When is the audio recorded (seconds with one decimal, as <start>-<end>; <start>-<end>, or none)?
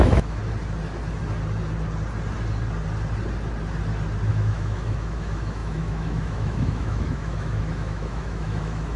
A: 0.4-4.3